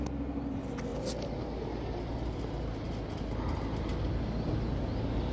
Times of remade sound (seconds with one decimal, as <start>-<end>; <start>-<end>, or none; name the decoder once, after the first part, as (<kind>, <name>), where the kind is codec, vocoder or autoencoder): none